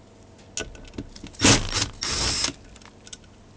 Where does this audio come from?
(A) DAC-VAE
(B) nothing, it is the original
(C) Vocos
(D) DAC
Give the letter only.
B